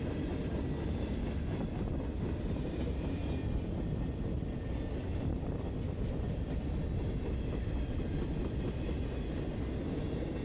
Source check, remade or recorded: recorded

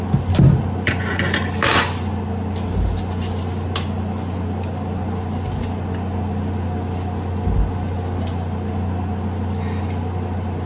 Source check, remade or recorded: recorded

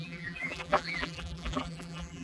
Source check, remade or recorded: remade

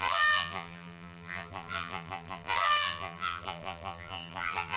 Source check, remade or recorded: remade